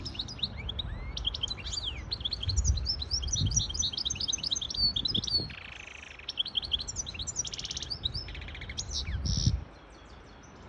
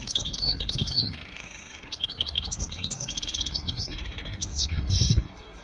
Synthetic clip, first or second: second